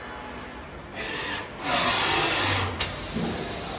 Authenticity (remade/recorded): recorded